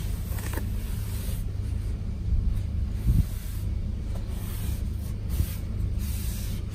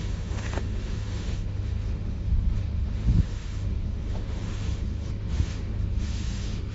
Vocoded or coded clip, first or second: second